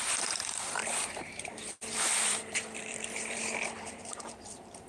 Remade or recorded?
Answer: remade